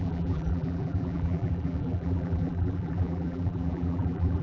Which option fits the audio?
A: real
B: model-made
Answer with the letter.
B